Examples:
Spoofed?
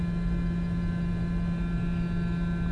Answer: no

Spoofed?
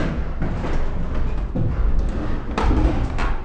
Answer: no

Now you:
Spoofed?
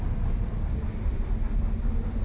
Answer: no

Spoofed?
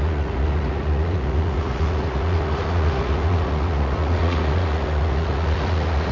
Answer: yes